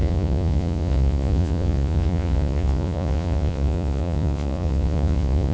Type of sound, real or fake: fake